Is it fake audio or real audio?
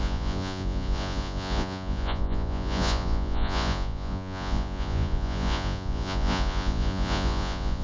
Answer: fake